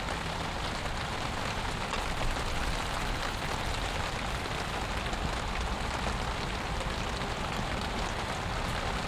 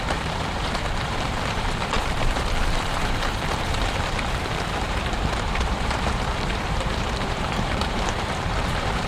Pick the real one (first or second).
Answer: first